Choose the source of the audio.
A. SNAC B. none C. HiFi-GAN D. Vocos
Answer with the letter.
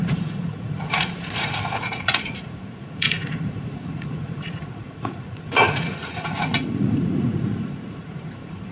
D